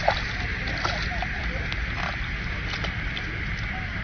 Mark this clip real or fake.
real